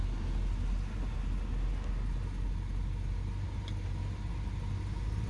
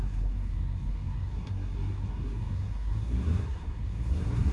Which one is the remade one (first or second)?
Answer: second